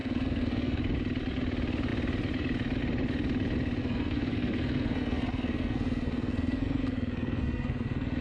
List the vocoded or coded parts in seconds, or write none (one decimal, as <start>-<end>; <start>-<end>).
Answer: 0.0-0.8; 3.8-8.2